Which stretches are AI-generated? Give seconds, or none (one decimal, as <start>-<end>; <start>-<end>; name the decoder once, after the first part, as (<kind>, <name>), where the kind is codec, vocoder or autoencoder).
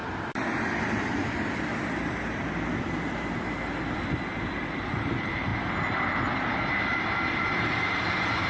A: 0.8-5.5 (vocoder, BigVGAN v2); 6.7-8.5